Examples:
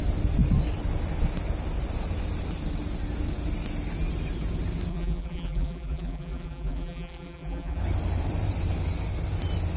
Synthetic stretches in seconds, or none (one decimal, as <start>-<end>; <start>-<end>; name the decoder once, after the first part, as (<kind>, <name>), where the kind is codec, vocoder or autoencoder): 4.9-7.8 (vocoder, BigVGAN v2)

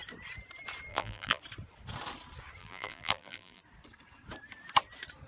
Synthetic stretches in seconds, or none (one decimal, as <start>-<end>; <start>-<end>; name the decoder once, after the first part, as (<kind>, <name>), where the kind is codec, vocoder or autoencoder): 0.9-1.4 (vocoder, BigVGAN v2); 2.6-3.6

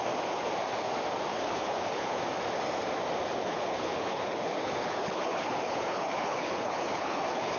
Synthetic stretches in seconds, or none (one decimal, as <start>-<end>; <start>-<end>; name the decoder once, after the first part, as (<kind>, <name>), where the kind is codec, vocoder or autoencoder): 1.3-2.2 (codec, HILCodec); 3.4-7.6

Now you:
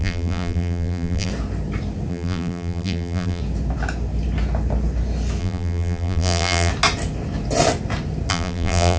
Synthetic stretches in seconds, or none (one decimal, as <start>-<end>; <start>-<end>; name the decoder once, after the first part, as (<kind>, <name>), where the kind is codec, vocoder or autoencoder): 0.0-1.3 (vocoder, BigVGAN v2); 2.1-3.4; 5.4-6.7; 8.3-9.0

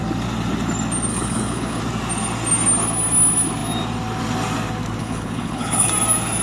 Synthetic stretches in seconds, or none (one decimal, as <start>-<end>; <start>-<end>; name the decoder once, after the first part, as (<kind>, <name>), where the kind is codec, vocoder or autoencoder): 1.1-1.8 (codec, HILCodec); 5.0-5.9

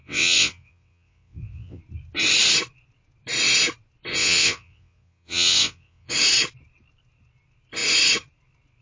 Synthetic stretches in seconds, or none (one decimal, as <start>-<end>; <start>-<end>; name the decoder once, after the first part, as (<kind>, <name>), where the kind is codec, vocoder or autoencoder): 0.0-1.8 (vocoder, WaveNeXt); 4.1-6.1